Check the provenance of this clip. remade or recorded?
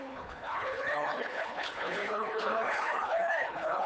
remade